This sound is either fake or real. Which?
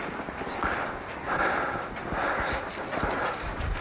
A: real